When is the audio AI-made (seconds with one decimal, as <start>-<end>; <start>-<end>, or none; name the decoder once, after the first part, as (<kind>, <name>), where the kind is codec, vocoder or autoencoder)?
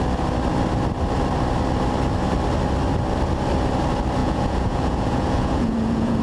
4.2-6.2 (vocoder, Vocos)